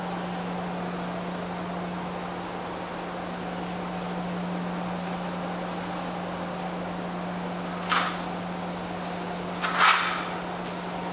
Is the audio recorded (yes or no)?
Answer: yes